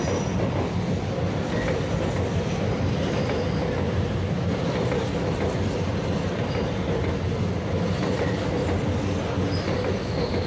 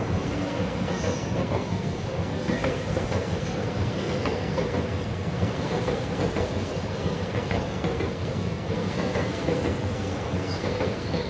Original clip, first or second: first